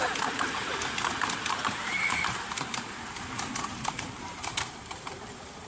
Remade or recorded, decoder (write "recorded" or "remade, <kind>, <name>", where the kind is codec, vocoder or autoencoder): remade, vocoder, BigVGAN v2